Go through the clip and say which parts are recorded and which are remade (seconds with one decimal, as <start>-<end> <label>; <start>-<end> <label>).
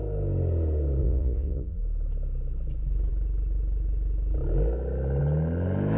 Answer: 0.0-1.0 recorded; 1.0-1.8 remade; 1.8-6.0 recorded